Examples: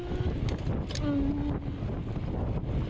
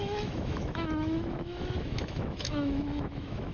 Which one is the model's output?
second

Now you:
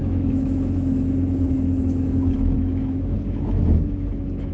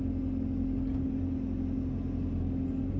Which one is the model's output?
first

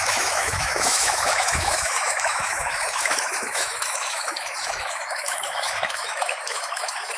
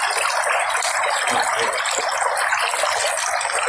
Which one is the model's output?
first